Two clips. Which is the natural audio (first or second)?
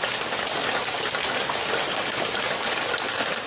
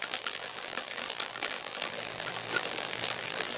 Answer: first